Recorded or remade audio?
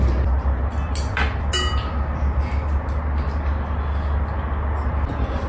recorded